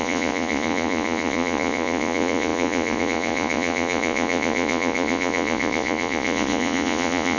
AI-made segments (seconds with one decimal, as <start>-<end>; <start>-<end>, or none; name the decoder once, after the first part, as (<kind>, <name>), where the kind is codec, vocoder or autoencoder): 0.0-7.4 (vocoder, Vocos)